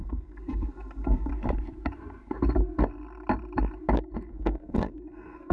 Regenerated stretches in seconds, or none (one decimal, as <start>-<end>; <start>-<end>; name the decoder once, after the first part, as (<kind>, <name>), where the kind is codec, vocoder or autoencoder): 0.0-1.3 (codec, SNAC); 4.3-5.5